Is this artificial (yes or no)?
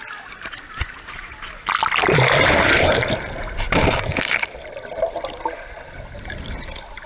no